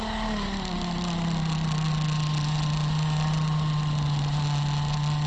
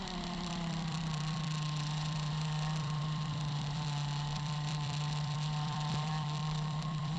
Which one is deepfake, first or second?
second